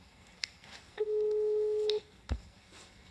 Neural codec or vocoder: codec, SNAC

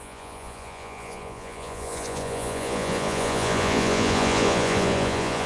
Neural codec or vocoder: vocoder, Vocos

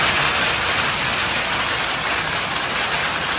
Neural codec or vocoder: none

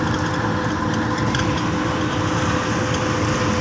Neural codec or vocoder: none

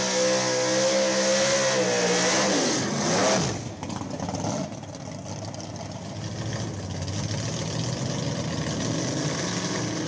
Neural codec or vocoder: none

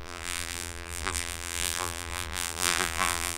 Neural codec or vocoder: vocoder, BigVGAN v2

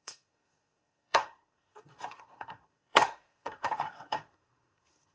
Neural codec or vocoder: codec, SNAC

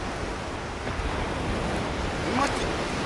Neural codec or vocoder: none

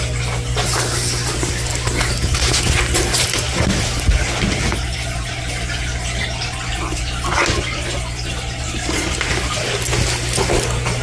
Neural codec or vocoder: none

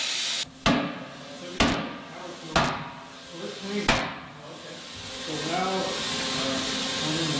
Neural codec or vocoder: none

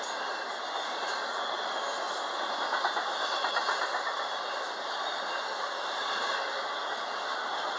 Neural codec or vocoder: none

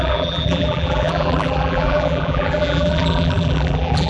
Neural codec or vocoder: vocoder, BigVGAN v2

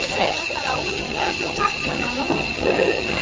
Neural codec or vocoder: vocoder, HiFi-GAN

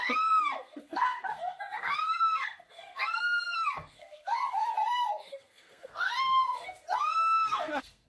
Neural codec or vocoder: codec, SNAC